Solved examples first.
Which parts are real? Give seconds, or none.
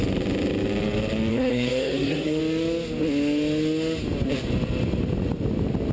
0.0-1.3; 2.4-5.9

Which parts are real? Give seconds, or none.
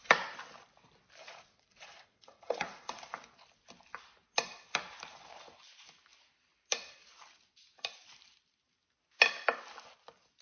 0.0-1.2; 3.0-10.4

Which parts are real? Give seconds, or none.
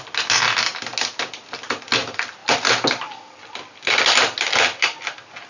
0.0-5.5